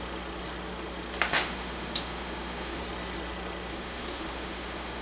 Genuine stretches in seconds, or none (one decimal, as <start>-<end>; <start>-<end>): 0.0-1.3; 2.8-3.7